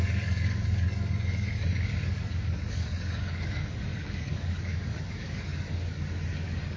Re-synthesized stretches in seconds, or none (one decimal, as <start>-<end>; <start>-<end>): 0.0-6.8